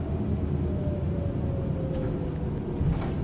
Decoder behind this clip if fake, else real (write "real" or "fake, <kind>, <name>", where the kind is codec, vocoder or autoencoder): real